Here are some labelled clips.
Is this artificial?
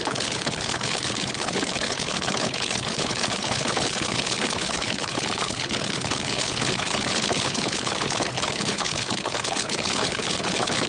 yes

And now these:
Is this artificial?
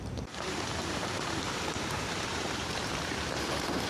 yes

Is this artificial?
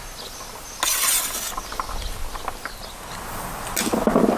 no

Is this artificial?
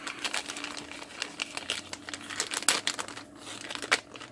no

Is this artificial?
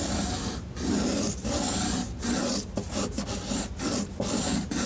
no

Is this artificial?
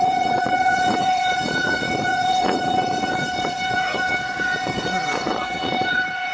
yes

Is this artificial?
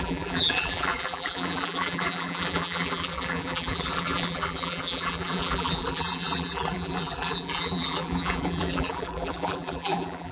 yes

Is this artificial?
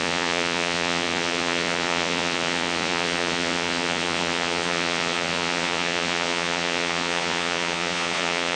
yes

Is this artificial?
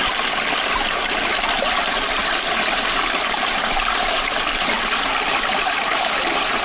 no